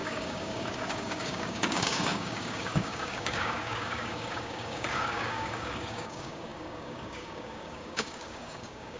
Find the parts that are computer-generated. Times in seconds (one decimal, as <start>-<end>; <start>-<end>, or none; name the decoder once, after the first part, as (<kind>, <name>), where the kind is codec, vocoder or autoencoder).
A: 0.0-9.0 (codec, DAC)